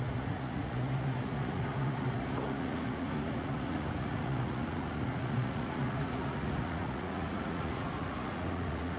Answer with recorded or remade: remade